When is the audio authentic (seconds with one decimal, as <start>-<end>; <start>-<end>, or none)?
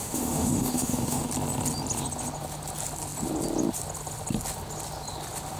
1.3-5.6